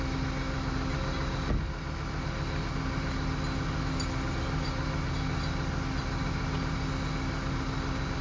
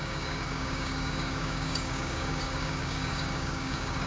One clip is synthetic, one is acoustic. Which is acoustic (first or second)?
first